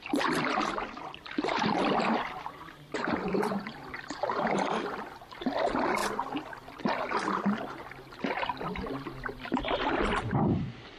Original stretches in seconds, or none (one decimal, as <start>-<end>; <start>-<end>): 6.0-8.2